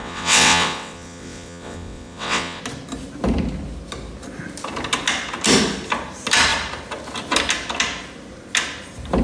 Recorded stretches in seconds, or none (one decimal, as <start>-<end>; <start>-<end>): 2.6-9.2